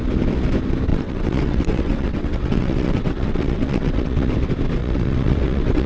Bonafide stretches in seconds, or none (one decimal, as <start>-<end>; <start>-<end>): 0.0-0.9; 4.3-4.8